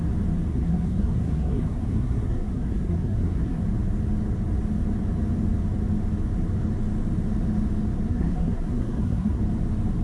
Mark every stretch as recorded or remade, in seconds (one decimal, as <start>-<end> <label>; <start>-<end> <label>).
0.0-0.5 recorded; 0.5-3.6 remade; 3.6-8.1 recorded; 8.1-9.4 remade; 9.4-10.0 recorded